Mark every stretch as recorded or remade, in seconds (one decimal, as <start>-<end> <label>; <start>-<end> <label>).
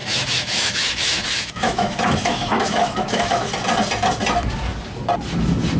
0.0-3.5 remade; 3.5-5.8 recorded